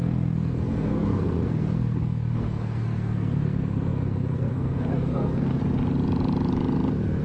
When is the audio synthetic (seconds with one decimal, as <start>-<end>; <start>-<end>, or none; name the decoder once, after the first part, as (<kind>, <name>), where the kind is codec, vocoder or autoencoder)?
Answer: 0.0-5.6 (codec, SNAC)

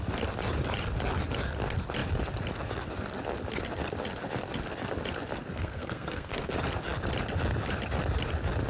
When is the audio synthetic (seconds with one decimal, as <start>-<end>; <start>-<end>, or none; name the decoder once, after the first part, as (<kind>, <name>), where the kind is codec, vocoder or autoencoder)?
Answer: 5.4-6.5 (codec, SNAC)

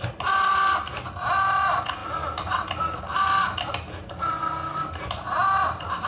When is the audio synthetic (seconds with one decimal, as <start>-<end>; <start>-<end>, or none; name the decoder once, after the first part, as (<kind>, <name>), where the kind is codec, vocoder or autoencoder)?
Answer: none

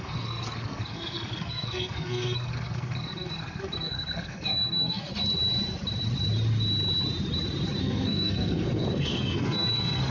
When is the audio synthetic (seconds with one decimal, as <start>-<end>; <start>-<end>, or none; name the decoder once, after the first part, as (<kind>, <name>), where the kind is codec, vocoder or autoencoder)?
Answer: 0.0-5.1 (codec, SNAC); 7.8-10.1

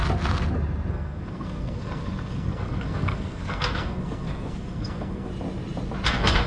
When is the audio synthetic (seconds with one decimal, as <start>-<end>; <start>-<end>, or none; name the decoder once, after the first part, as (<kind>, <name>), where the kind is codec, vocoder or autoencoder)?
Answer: 0.9-5.3 (codec, SNAC); 6.1-6.5

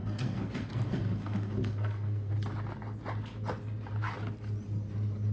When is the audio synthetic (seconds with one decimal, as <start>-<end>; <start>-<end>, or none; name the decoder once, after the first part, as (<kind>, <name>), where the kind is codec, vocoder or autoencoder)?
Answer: 0.0-2.3 (codec, SNAC)